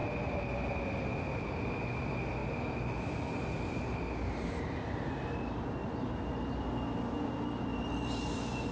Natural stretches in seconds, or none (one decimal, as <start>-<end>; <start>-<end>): 0.0-8.7